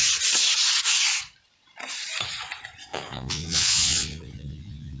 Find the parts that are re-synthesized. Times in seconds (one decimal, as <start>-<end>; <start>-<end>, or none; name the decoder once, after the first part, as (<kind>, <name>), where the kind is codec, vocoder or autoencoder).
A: 2.9-5.0 (vocoder, Vocos)